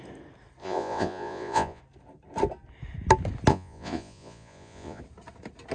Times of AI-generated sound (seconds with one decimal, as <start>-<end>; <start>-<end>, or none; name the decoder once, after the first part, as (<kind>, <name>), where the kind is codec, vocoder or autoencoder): 0.6-1.8 (vocoder, Vocos); 3.5-5.0